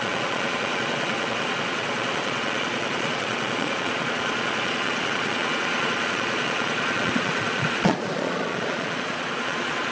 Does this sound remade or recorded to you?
remade